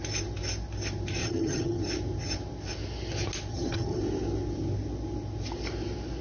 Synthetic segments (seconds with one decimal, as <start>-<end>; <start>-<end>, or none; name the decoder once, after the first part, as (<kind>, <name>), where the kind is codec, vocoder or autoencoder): 1.2-1.8 (vocoder, HiFi-GAN); 3.5-4.0